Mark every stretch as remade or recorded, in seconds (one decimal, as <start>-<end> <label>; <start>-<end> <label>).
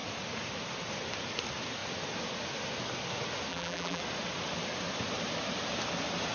0.0-3.5 recorded; 3.5-4.0 remade; 4.0-6.3 recorded